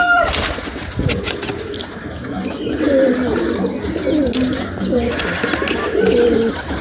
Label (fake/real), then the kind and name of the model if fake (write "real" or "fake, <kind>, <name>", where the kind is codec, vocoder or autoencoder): real